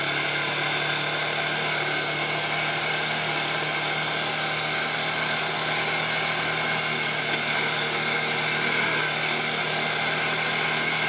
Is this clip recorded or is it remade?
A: recorded